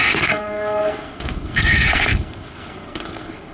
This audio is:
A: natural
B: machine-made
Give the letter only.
B